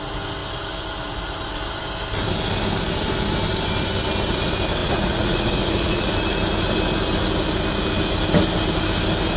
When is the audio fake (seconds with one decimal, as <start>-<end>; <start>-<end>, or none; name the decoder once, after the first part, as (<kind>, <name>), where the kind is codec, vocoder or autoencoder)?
4.8-6.1 (vocoder, Vocos)